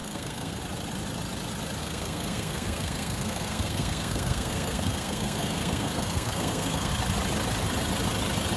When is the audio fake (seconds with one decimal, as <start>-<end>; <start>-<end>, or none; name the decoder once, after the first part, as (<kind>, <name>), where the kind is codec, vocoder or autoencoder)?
0.0-0.6 (codec, SNAC); 1.8-6.9

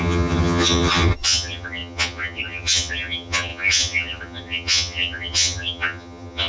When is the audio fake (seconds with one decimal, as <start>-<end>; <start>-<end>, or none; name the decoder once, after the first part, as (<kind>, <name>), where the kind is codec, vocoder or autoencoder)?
0.0-6.5 (vocoder, HiFi-GAN)

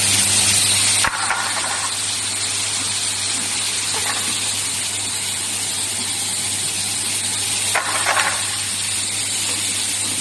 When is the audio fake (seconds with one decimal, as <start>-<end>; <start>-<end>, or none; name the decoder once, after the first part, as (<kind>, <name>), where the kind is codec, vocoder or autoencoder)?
none

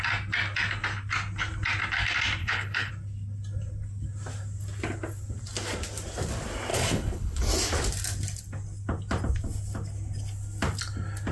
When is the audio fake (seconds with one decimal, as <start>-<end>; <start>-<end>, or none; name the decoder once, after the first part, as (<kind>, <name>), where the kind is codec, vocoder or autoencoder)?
2.4-2.9 (codec, HILCodec); 6.7-7.4

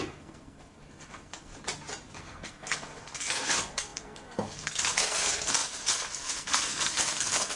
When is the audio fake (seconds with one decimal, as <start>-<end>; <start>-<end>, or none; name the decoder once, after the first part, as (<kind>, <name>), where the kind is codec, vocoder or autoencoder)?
0.0-1.5 (codec, SNAC); 2.2-7.6